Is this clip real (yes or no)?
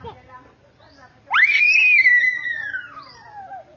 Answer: no